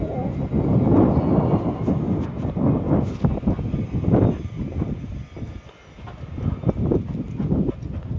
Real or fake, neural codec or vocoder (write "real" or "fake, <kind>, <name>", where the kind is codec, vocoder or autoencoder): real